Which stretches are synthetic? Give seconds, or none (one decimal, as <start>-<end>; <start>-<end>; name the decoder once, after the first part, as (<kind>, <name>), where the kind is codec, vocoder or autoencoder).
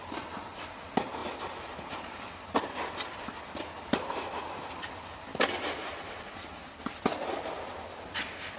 none